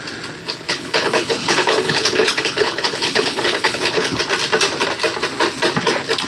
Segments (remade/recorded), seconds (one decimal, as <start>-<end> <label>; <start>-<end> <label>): 0.0-0.4 recorded; 0.4-4.2 remade; 4.2-6.3 recorded